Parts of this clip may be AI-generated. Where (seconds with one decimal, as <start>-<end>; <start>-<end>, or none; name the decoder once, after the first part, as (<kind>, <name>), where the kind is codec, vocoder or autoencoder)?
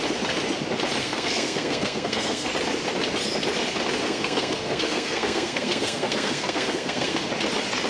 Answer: 1.0-2.5 (codec, SNAC); 4.0-7.2